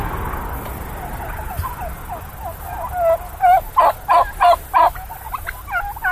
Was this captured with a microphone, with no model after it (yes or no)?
yes